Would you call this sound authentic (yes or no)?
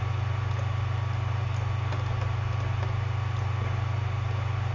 yes